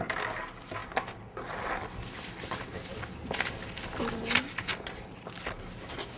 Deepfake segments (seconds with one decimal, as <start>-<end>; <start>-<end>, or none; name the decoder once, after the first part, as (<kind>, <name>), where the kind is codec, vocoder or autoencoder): none

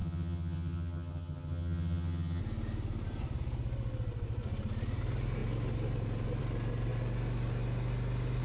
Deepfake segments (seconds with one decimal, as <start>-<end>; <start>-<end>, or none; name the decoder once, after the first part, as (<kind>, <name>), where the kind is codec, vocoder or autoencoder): 0.0-2.4 (vocoder, HiFi-GAN)

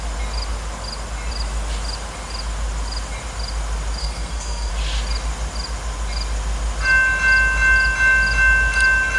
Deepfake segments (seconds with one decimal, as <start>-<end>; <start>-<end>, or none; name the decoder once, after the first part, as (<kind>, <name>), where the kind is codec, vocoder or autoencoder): 4.0-4.7 (codec, SNAC)